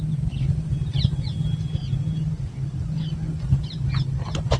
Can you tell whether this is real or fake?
real